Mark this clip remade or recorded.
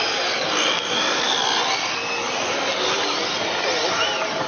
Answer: recorded